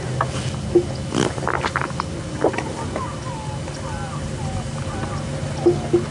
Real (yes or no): yes